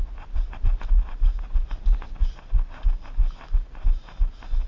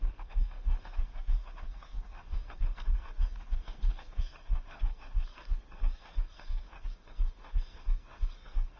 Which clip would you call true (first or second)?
first